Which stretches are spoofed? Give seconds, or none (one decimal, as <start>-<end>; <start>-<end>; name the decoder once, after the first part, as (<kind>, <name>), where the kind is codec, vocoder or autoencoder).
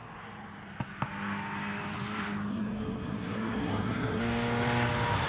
2.5-4.2 (codec, SNAC)